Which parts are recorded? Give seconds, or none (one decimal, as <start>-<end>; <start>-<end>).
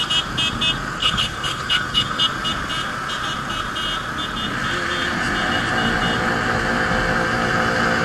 0.0-1.0; 2.2-8.0